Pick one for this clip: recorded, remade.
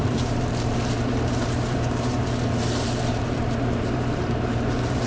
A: remade